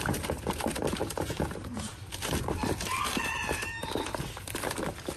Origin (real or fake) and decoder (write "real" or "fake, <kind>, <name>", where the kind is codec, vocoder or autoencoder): fake, vocoder, BigVGAN v2